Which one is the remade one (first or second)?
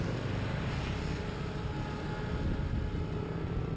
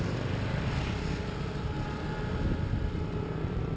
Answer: second